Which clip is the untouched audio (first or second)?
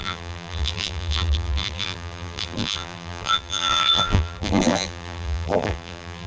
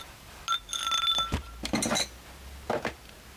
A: second